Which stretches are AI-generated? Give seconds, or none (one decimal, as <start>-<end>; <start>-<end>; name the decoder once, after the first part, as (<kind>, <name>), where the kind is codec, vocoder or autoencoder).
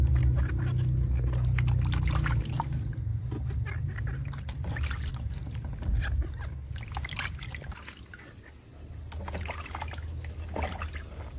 none